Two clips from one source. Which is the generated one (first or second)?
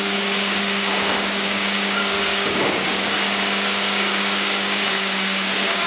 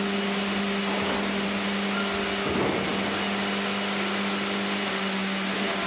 first